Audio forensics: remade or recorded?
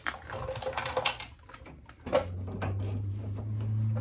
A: recorded